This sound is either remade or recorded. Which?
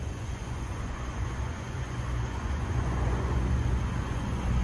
remade